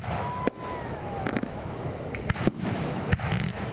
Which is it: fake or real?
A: fake